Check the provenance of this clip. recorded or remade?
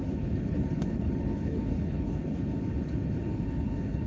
remade